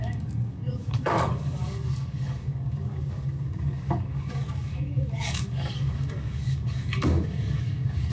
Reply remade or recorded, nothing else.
remade